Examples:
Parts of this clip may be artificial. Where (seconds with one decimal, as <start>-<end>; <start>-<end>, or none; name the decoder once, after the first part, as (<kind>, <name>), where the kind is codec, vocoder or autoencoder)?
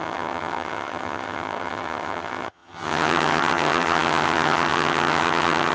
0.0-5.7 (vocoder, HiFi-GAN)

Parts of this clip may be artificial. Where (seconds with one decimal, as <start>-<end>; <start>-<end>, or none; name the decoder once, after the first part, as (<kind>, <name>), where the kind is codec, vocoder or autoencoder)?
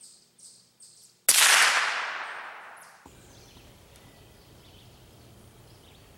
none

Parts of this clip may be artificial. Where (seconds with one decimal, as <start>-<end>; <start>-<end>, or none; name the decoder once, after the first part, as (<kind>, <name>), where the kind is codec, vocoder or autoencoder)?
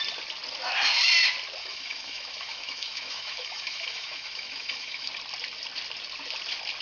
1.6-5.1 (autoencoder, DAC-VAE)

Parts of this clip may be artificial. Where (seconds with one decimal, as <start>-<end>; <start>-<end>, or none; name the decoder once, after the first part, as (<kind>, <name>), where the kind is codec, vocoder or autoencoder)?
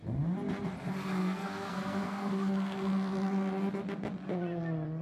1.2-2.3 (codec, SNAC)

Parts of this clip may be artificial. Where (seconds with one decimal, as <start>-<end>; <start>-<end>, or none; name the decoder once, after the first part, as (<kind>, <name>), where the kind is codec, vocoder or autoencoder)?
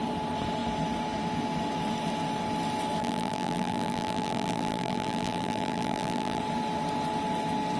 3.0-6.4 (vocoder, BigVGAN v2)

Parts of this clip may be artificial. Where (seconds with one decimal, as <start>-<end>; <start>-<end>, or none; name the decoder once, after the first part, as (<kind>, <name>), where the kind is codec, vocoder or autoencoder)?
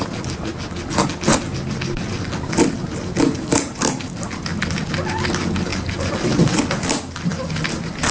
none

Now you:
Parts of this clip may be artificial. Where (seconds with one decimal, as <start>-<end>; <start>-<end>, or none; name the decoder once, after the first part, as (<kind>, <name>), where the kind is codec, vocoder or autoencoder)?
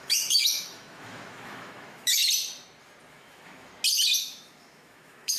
0.0-2.2 (autoencoder, DAC-VAE); 3.1-3.7; 4.2-5.4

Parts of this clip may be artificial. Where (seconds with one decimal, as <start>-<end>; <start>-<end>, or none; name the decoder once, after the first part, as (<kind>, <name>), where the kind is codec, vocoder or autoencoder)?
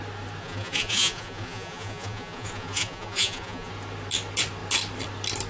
0.4-3.7 (vocoder, Vocos)